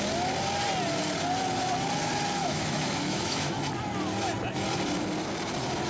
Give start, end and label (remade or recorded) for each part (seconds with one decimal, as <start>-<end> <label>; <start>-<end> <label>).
0.0-2.4 recorded; 2.4-3.5 remade; 3.5-5.9 recorded

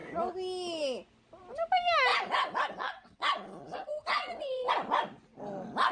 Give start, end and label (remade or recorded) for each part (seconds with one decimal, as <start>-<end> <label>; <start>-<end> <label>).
0.0-2.1 recorded; 2.1-4.7 remade; 4.7-5.9 recorded

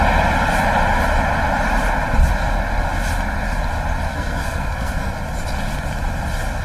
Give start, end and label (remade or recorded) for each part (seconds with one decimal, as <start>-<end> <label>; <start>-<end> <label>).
0.0-4.1 recorded; 4.1-5.1 remade; 5.1-6.6 recorded

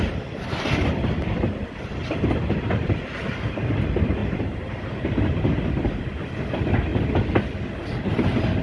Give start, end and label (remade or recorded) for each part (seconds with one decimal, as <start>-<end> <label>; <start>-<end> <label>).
0.0-4.2 recorded; 4.2-4.8 remade; 4.8-8.6 recorded